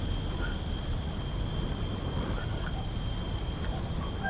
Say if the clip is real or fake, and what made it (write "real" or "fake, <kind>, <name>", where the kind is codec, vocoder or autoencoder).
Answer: real